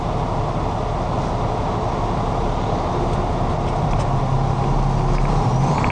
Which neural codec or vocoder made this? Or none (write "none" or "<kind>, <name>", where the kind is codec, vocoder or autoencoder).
none